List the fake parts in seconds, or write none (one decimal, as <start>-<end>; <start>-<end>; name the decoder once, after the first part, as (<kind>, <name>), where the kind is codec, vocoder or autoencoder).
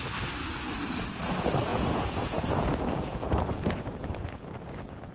1.7-5.1 (vocoder, Vocos)